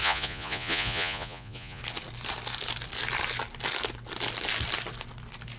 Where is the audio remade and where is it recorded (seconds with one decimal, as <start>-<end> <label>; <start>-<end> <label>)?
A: 0.0-1.8 remade; 1.8-5.6 recorded